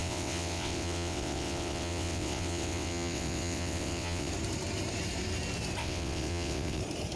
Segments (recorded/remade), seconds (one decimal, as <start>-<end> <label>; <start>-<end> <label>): 0.0-4.3 remade; 4.3-5.8 recorded; 5.8-6.8 remade; 6.8-7.2 recorded